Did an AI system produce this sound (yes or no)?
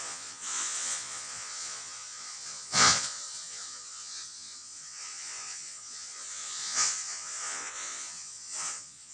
yes